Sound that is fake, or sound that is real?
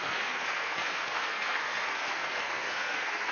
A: fake